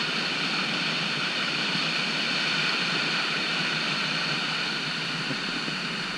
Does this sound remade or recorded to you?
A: recorded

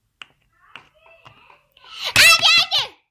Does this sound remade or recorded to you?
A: recorded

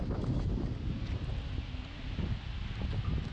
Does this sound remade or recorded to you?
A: recorded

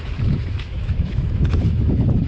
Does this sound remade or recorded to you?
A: remade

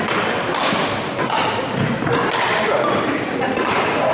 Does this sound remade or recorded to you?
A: recorded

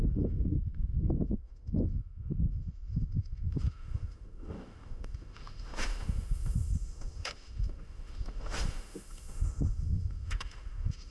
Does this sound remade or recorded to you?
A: remade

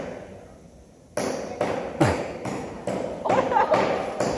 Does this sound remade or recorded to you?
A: recorded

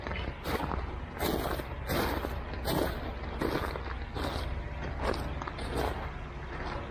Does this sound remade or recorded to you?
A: recorded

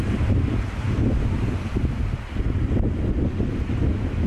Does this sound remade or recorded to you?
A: recorded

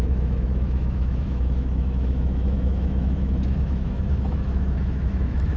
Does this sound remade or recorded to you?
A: remade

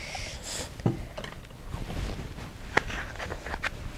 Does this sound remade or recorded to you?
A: recorded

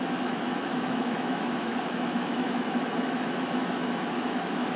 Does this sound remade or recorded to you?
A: remade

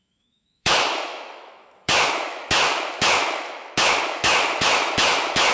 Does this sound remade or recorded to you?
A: remade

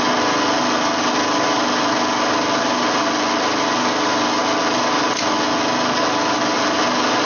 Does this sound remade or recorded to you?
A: recorded